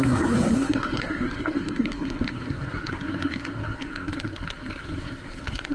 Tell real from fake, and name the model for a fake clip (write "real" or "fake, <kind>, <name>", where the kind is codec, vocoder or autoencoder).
fake, codec, SNAC